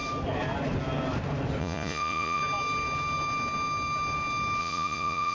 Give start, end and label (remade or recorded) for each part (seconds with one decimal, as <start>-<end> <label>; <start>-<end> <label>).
0.0-1.6 recorded; 1.6-2.4 remade; 2.4-4.6 recorded; 4.6-5.3 remade